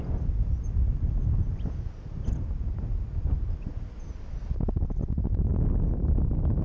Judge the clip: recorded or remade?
recorded